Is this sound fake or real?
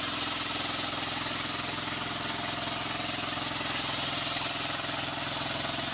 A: real